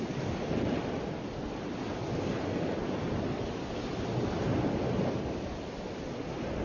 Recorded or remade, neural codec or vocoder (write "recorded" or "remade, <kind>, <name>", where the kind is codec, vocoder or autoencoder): recorded